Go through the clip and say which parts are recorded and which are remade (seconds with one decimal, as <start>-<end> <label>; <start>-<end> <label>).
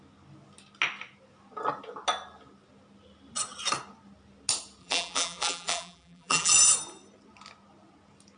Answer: 0.0-4.8 recorded; 4.8-6.5 remade; 6.5-8.4 recorded